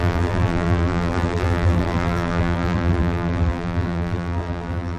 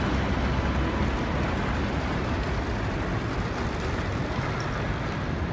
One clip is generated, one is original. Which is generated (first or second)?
first